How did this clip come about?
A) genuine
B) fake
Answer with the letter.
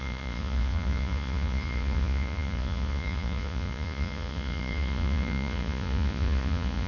B